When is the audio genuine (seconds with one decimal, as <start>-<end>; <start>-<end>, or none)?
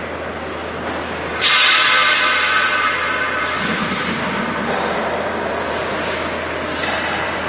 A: 0.0-1.3; 5.8-7.5